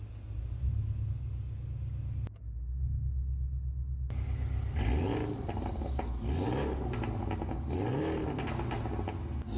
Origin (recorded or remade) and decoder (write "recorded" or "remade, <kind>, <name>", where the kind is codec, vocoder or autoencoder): recorded